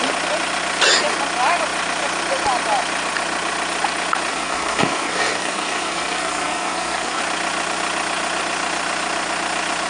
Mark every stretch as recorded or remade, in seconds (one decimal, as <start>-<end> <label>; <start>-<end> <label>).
0.0-4.3 recorded; 4.3-7.2 remade; 7.2-9.9 recorded